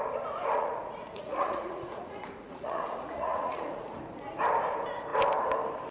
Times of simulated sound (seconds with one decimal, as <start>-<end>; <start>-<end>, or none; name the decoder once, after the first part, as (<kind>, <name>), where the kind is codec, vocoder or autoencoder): 0.5-4.0 (vocoder, Vocos)